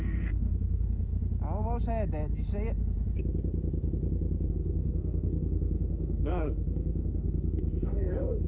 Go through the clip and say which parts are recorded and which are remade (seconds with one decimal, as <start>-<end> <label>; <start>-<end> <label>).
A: 0.0-1.1 remade; 1.1-4.5 recorded; 4.5-8.5 remade